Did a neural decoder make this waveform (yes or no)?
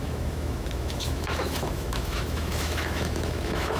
yes